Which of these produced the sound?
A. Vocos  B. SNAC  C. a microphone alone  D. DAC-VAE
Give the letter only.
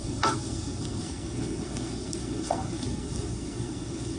B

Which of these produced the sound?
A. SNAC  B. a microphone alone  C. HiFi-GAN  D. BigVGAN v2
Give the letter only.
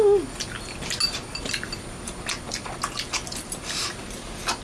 B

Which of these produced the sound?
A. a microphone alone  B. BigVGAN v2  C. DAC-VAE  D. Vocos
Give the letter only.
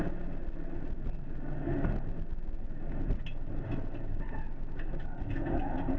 A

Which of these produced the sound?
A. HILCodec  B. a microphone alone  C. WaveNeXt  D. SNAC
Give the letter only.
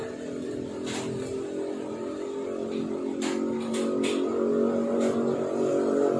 B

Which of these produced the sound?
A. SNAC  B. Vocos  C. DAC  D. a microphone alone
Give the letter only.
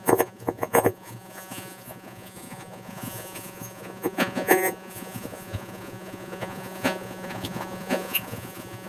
B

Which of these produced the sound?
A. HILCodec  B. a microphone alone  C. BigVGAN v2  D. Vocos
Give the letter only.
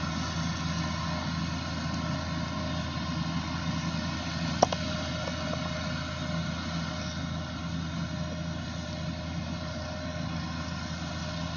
B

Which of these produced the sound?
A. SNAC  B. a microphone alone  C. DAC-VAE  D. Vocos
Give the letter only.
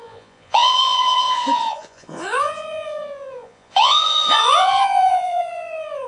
D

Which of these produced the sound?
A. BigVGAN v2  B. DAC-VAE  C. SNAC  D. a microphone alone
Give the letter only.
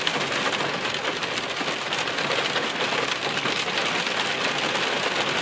D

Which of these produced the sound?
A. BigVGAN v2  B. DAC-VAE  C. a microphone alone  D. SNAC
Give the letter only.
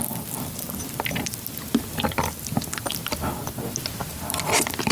C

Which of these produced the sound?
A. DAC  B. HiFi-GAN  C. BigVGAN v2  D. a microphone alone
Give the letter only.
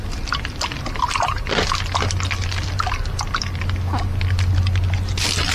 D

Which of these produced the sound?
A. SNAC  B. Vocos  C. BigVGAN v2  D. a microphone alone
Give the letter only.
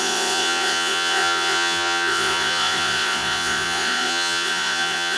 B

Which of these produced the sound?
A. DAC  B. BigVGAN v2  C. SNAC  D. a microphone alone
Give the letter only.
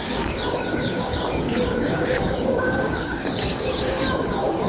A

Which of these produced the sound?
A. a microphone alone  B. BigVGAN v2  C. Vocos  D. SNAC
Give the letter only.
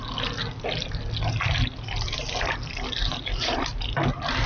A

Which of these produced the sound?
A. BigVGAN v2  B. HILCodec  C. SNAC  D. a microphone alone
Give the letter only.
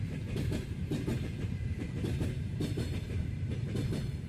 A